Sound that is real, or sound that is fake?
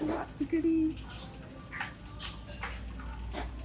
real